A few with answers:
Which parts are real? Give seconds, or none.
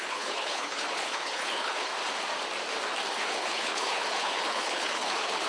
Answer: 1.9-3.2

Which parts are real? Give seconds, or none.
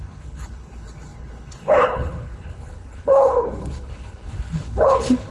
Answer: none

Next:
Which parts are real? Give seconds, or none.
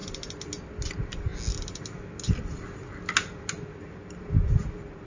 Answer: 0.0-5.1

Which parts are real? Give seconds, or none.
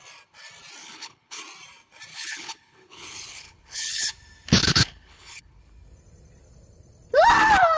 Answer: 0.0-0.8; 1.4-2.1; 4.1-4.6; 5.6-7.8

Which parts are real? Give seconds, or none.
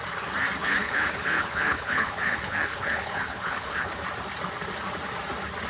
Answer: 0.0-0.6; 4.0-5.7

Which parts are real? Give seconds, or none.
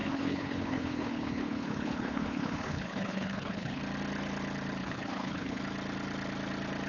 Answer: 3.8-4.8; 5.6-6.9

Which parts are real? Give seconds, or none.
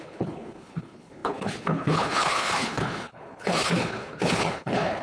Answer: none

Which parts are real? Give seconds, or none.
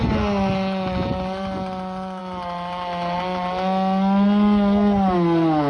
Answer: 0.0-5.7